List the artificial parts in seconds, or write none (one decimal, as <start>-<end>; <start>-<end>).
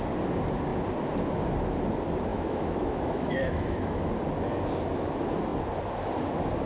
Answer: 2.3-4.1